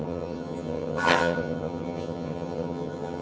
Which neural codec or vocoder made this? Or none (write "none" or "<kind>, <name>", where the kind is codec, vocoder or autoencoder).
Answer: vocoder, HiFi-GAN